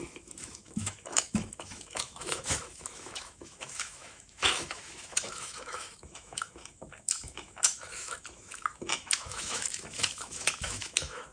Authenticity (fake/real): fake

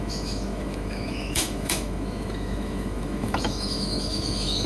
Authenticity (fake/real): fake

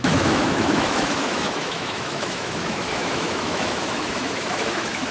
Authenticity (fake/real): fake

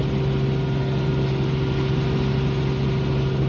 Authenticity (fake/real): real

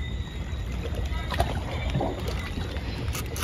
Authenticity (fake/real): real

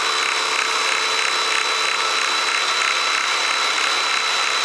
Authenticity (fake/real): real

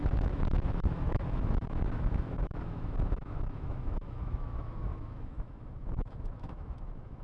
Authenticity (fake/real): fake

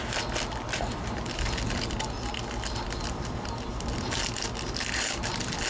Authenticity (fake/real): real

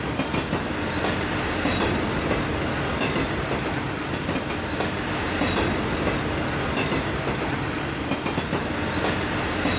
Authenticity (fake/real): real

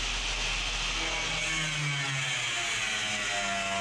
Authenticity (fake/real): real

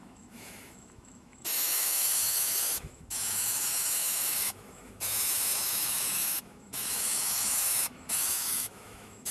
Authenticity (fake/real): fake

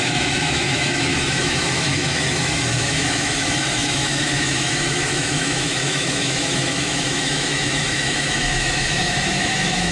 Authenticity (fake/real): fake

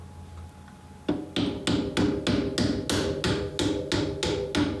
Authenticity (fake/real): real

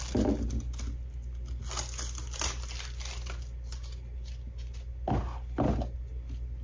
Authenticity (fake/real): real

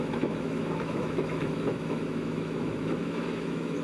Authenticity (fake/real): fake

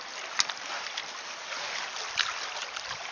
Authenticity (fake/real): real